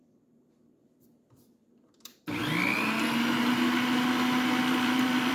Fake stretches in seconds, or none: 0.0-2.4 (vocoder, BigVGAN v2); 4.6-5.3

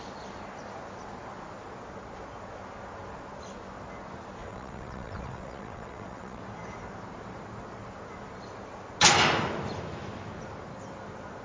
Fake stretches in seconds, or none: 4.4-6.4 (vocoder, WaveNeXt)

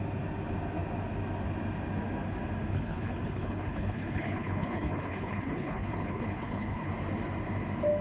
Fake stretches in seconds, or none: 2.7-6.9 (codec, HILCodec)